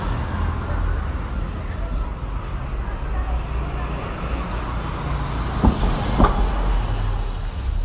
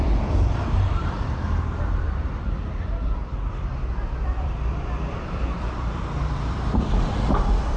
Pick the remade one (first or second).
second